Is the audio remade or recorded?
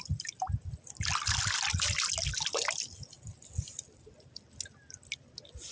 recorded